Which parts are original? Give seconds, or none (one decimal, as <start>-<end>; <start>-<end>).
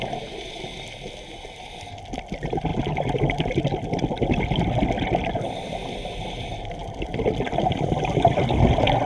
0.0-9.1